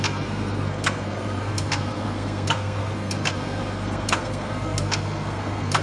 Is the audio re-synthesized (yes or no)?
yes